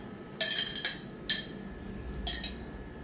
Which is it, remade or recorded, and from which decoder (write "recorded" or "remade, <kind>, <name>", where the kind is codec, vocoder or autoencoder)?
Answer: recorded